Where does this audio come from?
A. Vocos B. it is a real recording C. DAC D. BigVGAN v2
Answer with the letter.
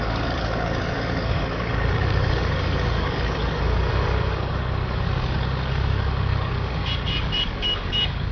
C